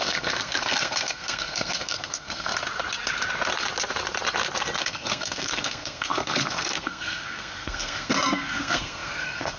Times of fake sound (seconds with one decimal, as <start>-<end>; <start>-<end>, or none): 0.0-2.5; 4.8-9.6